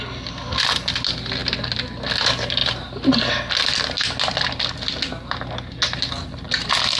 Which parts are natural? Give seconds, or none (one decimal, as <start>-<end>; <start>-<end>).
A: 0.0-7.0